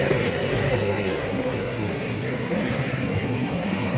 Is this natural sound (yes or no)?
no